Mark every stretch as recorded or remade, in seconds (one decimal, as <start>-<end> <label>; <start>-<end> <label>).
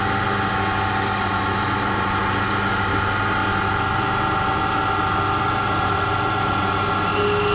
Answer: 0.0-7.5 recorded